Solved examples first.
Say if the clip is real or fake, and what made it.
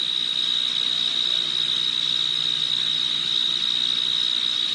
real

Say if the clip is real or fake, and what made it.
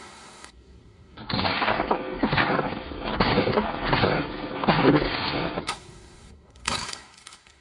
fake, codec, SNAC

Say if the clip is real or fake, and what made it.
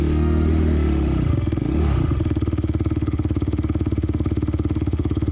fake, autoencoder, DAC-VAE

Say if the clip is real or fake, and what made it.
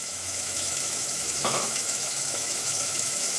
fake, autoencoder, DAC-VAE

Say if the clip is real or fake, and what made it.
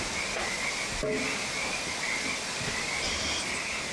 real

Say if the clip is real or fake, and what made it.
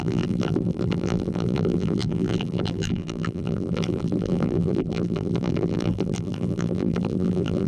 fake, vocoder, BigVGAN v2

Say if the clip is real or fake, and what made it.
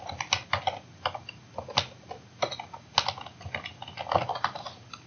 real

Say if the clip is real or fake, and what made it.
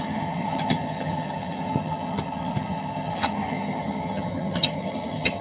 fake, vocoder, HiFi-GAN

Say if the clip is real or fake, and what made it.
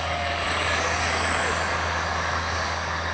fake, codec, DAC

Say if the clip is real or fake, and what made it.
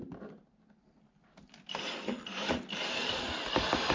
real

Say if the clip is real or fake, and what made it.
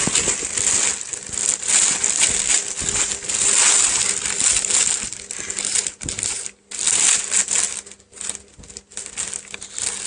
real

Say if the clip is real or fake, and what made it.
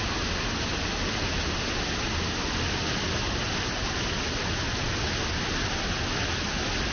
real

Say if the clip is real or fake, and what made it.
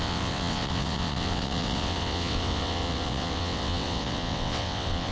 fake, vocoder, WaveNeXt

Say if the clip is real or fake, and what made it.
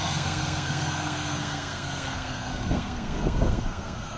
fake, codec, SNAC